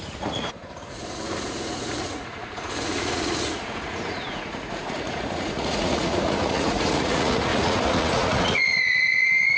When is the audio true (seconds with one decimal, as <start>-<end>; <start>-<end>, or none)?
none